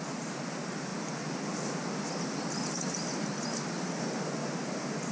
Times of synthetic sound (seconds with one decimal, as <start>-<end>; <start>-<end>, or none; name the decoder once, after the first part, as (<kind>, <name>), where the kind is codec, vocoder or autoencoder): 4.4-5.1 (vocoder, BigVGAN v2)